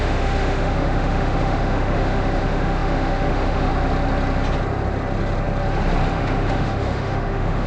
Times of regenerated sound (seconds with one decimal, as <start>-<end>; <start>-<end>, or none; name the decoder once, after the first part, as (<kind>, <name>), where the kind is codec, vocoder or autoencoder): 0.0-3.7 (autoencoder, DAC-VAE); 6.1-7.7